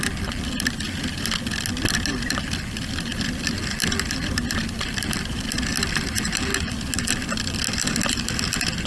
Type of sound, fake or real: real